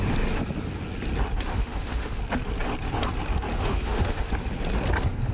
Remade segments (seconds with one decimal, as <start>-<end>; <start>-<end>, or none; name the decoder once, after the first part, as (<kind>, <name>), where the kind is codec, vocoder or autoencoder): 1.5-2.2 (autoencoder, DAC-VAE); 3.5-4.3